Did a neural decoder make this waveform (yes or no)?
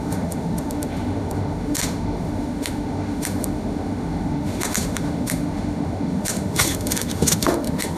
yes